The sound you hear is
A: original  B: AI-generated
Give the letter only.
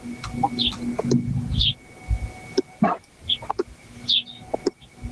A